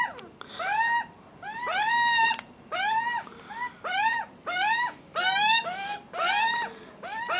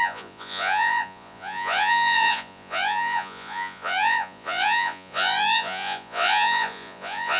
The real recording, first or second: first